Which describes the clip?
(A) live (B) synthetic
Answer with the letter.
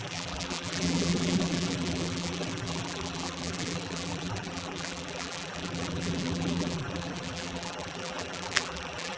B